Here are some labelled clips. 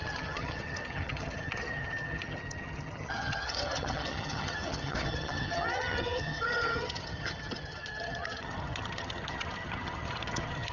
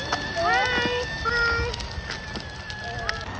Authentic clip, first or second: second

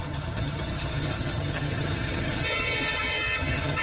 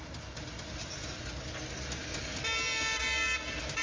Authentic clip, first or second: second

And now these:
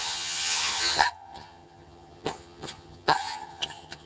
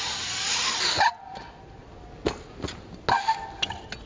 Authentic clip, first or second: second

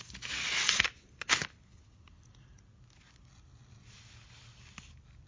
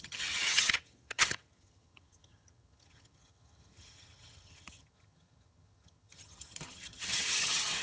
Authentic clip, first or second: first